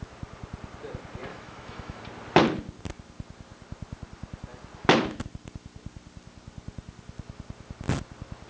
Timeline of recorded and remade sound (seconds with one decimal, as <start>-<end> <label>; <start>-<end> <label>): 0.0-1.3 recorded; 1.3-2.0 remade; 2.0-8.5 recorded